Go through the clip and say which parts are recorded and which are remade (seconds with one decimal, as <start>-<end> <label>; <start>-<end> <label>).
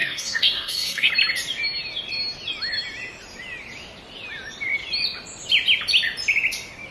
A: 0.0-1.1 remade; 1.1-6.9 recorded